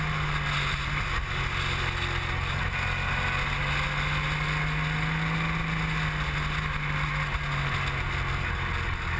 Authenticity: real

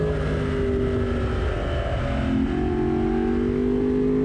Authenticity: real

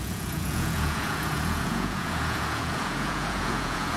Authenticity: fake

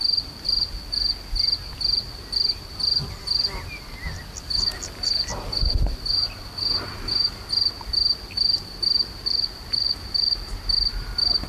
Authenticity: real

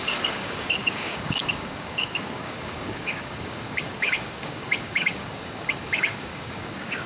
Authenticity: fake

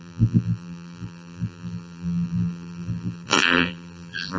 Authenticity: fake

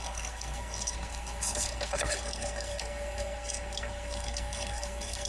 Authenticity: fake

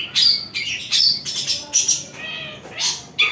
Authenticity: real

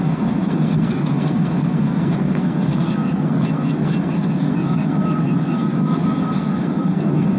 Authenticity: fake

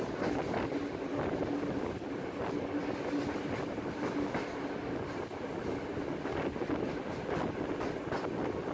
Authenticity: real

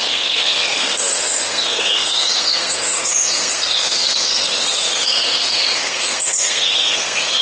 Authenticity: fake